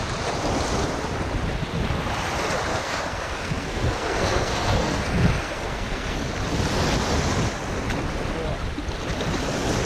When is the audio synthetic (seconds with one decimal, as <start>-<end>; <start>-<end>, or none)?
2.7-6.3